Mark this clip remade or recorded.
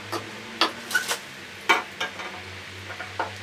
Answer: recorded